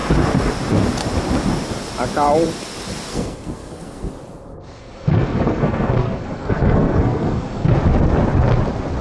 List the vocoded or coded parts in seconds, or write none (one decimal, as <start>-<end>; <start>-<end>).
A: 3.1-4.1; 4.5-7.7